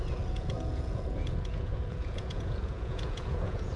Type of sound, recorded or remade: remade